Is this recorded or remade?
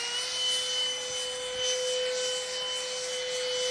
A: recorded